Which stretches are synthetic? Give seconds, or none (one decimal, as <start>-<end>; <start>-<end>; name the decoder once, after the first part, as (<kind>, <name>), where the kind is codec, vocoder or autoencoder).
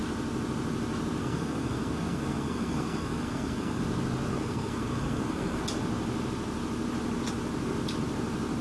1.2-3.8 (codec, SNAC); 4.3-5.6